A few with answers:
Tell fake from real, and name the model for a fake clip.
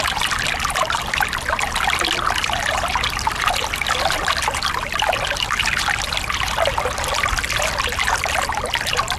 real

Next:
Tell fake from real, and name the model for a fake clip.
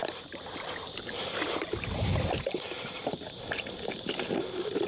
real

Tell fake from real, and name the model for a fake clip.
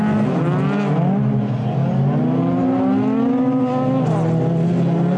real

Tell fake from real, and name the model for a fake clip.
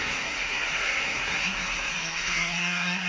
fake, codec, SNAC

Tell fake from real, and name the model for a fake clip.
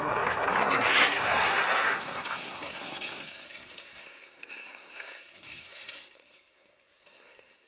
fake, codec, SNAC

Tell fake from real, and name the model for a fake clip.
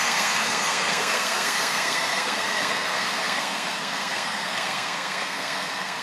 fake, codec, SNAC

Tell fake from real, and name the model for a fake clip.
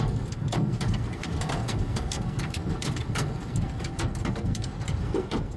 fake, codec, SNAC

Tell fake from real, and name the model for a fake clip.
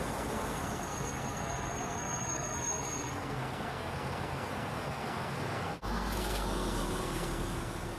fake, codec, SNAC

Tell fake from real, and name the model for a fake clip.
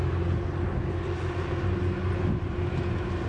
real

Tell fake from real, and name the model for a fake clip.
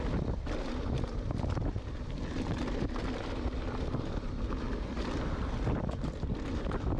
real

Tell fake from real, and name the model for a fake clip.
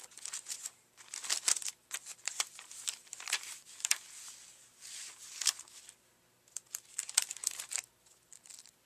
real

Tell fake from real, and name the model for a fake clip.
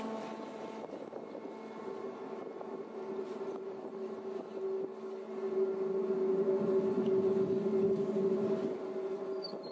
real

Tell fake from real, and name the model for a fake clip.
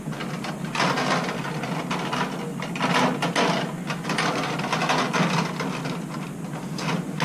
real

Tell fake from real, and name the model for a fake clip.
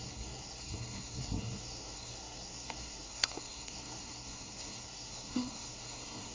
fake, codec, SNAC